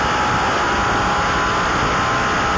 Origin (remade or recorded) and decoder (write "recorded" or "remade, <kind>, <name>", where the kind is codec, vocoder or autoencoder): recorded